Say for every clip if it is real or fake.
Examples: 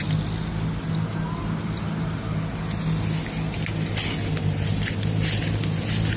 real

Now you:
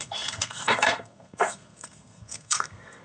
fake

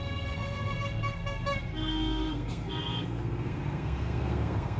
fake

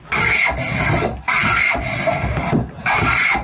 real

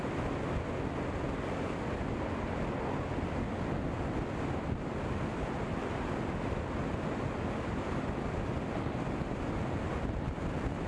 real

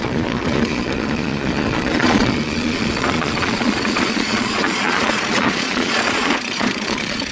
fake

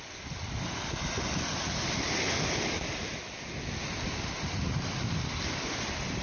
real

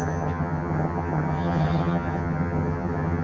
fake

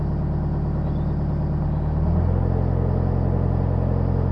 real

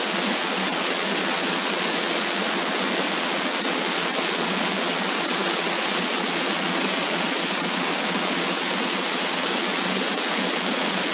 fake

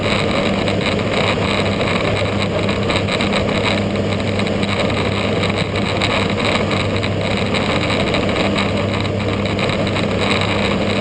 real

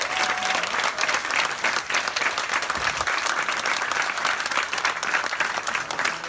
real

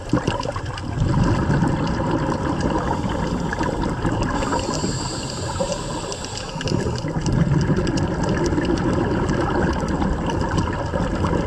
real